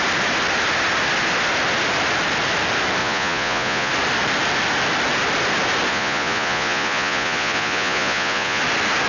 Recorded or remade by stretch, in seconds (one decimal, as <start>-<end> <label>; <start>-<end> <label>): 0.0-3.0 recorded; 3.0-3.9 remade; 3.9-5.9 recorded; 5.9-8.6 remade; 8.6-9.1 recorded